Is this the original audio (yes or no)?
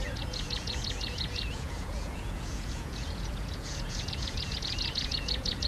no